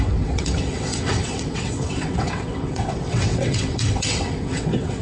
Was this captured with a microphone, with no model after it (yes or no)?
no